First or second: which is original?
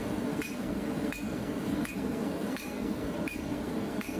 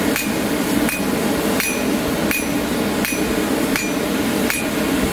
second